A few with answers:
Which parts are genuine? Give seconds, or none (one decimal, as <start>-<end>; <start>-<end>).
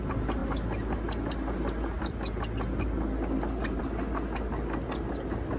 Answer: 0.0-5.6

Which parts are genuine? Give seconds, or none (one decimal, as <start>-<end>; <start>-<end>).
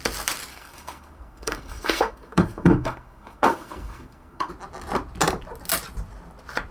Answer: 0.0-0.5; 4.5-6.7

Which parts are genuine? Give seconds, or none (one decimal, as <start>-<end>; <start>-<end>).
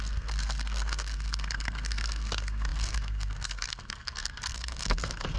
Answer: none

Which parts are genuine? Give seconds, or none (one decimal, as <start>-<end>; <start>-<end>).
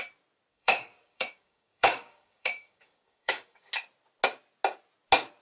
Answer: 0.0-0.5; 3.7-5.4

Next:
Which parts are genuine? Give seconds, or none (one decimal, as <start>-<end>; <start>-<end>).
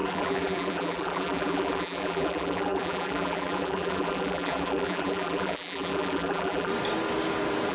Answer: 6.7-7.7